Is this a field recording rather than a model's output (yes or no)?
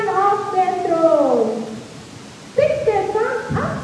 yes